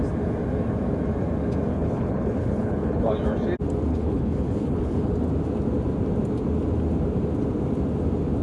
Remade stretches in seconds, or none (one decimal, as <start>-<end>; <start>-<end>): 1.7-3.1; 3.9-5.1